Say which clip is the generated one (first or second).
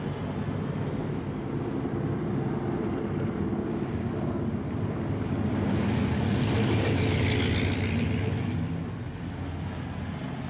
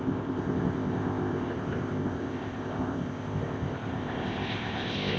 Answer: second